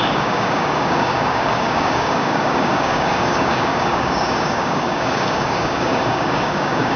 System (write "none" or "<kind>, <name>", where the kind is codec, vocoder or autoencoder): codec, DAC